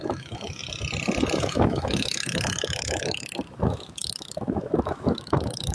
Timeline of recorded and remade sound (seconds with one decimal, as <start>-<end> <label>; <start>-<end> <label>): 0.0-0.6 remade; 0.6-1.4 recorded; 1.4-5.7 remade